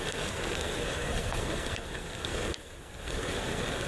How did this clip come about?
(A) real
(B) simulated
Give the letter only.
B